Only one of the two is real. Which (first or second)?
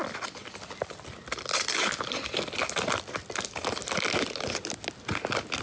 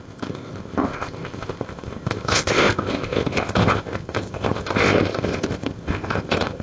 first